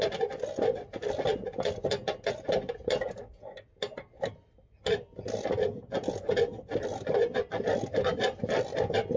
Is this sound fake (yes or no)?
no